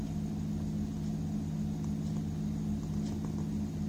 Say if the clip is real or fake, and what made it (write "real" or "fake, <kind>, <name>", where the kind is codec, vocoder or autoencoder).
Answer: real